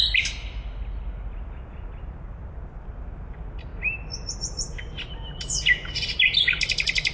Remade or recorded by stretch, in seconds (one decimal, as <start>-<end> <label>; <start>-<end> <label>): 0.0-7.1 recorded